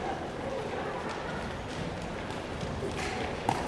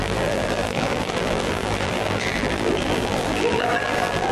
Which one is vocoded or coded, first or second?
second